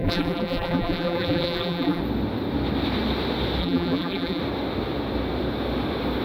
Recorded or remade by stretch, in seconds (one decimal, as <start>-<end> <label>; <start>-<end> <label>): 0.0-2.0 remade; 2.0-3.6 recorded; 3.6-4.4 remade; 4.4-6.2 recorded